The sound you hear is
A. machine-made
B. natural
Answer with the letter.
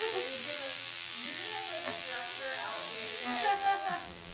A